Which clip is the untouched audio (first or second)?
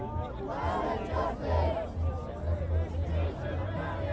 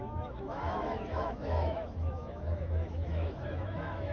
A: first